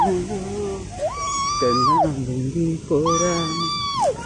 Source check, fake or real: real